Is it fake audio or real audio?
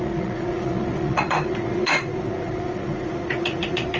fake